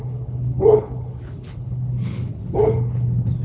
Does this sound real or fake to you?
fake